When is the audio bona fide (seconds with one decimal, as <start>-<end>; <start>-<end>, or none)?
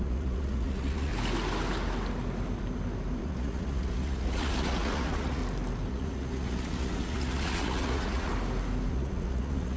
1.1-3.2; 5.4-5.9; 8.3-8.9